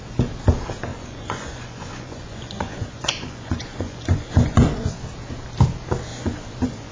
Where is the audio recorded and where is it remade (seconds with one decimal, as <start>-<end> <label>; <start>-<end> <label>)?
0.0-0.9 recorded; 0.9-5.0 remade; 5.0-6.1 recorded; 6.1-6.9 remade